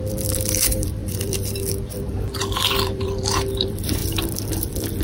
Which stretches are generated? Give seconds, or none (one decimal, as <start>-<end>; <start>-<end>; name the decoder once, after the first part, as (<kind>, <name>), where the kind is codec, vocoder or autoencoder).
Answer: 0.0-5.0 (vocoder, BigVGAN v2)